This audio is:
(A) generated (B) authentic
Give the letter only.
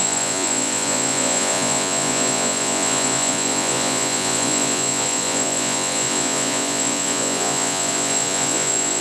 A